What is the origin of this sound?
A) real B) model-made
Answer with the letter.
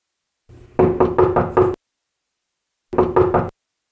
A